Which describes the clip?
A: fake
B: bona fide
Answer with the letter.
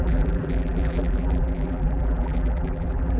A